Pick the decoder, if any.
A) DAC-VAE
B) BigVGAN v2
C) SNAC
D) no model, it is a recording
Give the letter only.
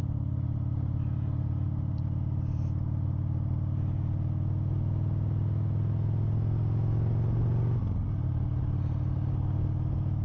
D